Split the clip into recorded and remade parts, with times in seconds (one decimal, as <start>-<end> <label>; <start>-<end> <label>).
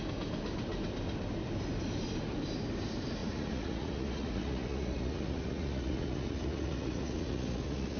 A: 0.0-3.2 recorded; 3.2-8.0 remade